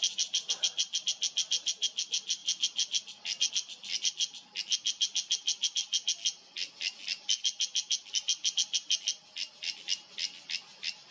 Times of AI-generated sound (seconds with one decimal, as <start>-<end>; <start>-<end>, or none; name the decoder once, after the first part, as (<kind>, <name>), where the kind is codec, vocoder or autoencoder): none